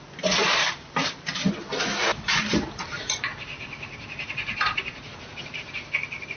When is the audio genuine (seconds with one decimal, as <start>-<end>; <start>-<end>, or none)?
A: 0.0-0.4; 1.5-2.1; 5.9-6.4